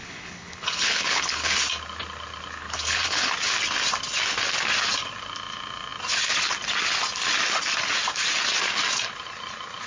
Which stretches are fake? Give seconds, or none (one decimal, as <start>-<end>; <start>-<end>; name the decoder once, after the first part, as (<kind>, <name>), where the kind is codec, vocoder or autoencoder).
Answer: 0.0-1.7 (codec, HILCodec); 2.6-3.3